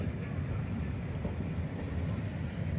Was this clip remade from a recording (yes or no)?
no